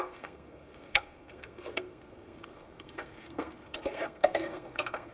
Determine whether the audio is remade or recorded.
remade